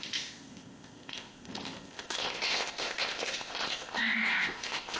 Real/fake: fake